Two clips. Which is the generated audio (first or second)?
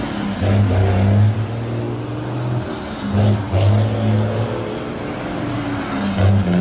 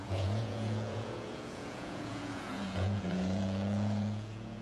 second